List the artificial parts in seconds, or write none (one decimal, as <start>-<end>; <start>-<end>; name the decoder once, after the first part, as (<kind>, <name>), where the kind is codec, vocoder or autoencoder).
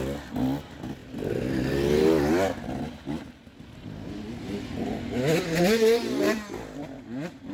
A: none